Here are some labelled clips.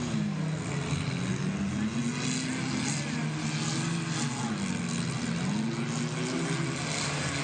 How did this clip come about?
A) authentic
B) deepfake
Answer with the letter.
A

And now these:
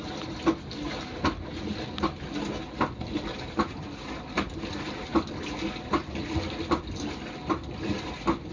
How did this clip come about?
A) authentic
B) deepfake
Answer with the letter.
A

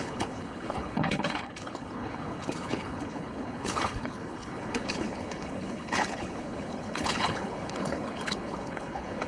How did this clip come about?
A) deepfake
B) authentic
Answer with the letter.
A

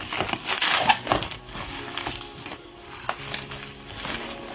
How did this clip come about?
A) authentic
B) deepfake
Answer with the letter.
A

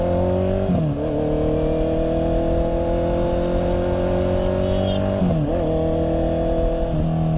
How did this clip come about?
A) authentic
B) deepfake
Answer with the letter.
A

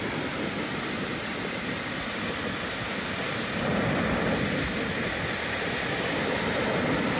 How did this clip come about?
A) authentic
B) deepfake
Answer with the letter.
A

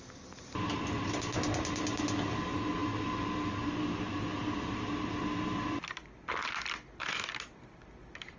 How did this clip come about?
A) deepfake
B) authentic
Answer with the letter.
B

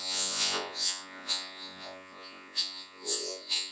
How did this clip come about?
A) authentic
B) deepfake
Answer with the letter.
B